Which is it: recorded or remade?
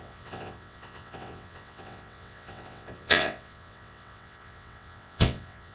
remade